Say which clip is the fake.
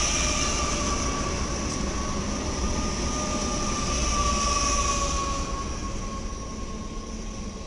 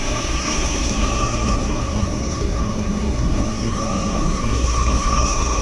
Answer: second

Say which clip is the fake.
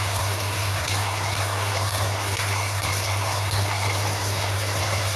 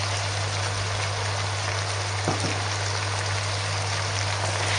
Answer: first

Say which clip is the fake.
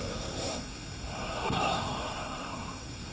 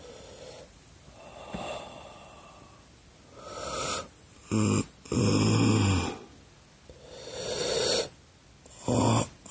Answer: first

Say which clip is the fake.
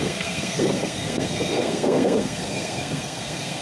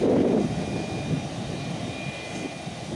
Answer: first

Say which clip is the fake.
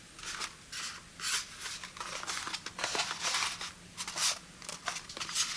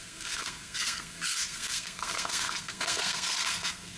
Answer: second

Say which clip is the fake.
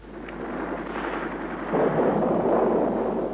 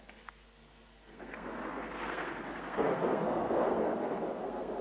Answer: second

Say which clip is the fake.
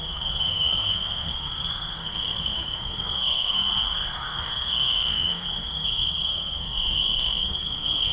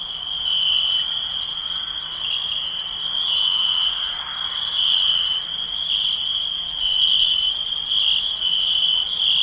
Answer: first